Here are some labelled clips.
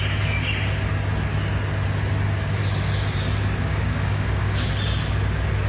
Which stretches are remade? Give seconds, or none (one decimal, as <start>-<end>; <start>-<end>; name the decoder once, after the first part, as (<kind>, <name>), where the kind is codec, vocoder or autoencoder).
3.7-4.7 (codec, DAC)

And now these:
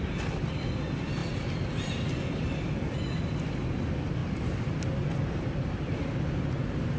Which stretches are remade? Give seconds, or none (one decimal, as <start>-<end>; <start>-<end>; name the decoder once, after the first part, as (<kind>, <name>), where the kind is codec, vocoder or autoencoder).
none

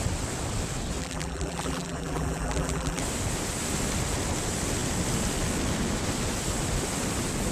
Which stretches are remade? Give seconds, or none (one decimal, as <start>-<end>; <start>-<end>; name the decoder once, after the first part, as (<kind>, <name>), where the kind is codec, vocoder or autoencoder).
1.0-3.0 (vocoder, BigVGAN v2)

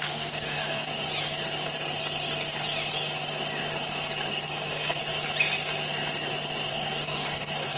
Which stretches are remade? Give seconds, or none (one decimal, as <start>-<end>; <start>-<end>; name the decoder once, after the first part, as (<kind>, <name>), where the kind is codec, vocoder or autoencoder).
0.0-0.9 (codec, SNAC); 4.3-5.0; 6.7-7.8

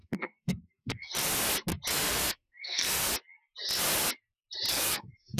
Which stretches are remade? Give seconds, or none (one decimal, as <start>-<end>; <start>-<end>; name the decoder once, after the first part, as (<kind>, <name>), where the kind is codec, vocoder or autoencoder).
0.0-1.1 (codec, SNAC); 1.9-3.1; 4.7-5.4

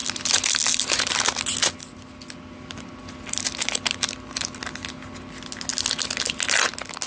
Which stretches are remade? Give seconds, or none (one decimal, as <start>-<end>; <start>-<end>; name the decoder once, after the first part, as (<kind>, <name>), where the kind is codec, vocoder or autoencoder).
none